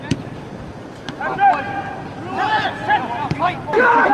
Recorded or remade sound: recorded